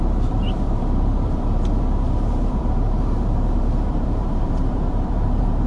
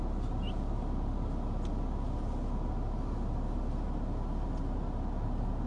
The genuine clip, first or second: second